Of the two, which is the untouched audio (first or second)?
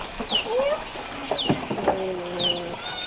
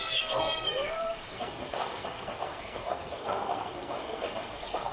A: first